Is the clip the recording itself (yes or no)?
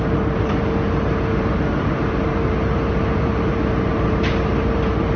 no